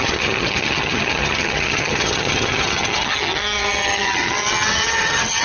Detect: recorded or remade remade